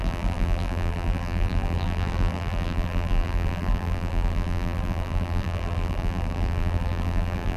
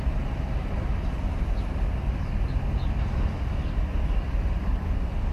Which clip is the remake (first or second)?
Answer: first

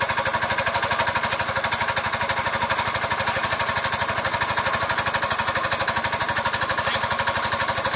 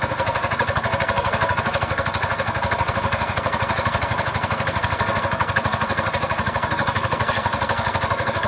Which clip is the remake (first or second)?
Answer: second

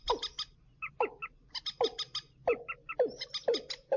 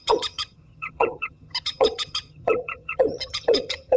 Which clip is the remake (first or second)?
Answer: second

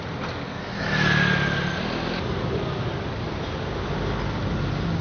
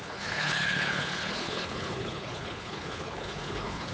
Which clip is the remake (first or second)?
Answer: second